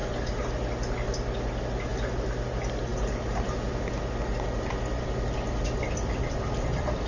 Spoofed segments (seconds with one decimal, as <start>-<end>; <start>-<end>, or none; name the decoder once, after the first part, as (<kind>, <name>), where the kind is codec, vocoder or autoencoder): 0.0-0.5 (vocoder, BigVGAN v2)

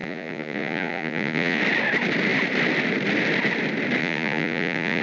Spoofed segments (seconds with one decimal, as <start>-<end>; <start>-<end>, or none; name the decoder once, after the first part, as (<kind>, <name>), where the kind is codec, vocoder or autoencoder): 0.0-1.6 (vocoder, Vocos); 4.0-5.0

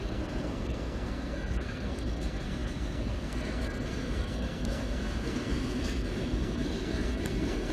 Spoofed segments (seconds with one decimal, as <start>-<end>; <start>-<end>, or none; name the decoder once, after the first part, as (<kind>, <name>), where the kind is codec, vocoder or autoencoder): 0.0-7.7 (codec, SNAC)

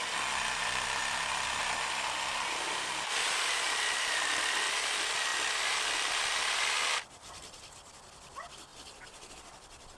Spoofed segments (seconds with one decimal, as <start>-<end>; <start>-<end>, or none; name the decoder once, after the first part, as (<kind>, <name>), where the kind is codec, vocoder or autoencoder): none

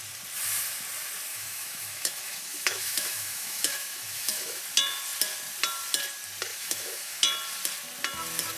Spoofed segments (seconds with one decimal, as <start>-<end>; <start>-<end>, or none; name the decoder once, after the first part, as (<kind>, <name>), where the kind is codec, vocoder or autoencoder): 1.3-4.6 (autoencoder, DAC-VAE); 6.5-7.2

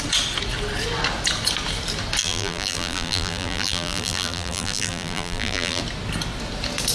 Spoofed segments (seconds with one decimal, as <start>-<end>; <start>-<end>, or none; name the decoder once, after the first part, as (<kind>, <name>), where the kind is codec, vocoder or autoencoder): 2.2-5.8 (vocoder, BigVGAN v2)